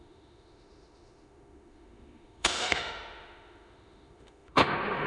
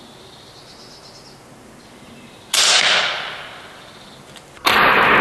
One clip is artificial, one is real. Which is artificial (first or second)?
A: first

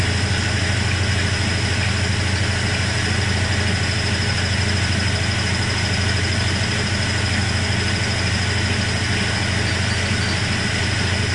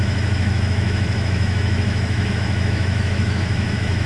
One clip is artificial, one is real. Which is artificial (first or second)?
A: second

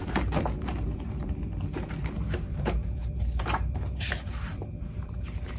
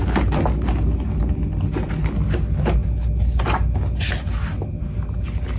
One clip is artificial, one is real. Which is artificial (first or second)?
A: first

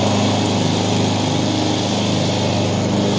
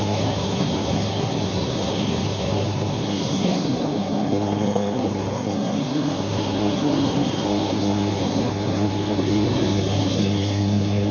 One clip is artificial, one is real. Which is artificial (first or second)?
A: second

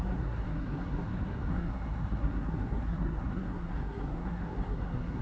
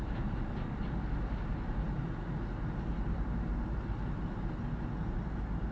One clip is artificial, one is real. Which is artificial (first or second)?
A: first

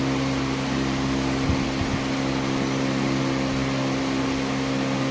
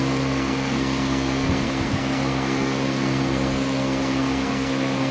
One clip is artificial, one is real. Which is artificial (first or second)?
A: second